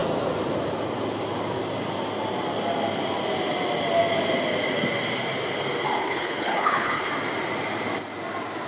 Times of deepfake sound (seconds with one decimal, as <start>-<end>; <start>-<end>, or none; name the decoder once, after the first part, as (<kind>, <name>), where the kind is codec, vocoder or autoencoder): 6.0-7.1 (codec, HILCodec)